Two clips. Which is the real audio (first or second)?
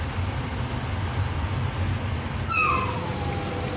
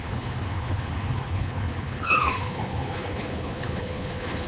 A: first